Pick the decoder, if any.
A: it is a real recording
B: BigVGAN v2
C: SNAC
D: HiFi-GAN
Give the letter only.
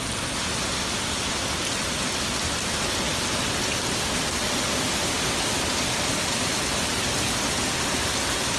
A